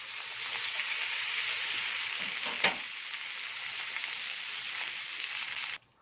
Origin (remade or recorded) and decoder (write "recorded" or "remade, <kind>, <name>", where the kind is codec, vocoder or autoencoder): recorded